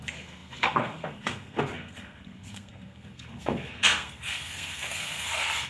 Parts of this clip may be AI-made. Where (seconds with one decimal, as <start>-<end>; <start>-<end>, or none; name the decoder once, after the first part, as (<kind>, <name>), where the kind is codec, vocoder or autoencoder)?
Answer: 0.0-5.7 (codec, SNAC)